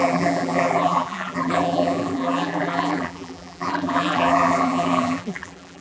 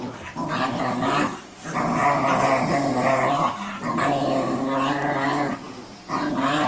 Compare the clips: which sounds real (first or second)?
second